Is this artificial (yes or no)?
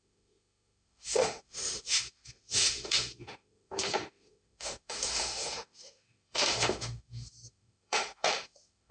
yes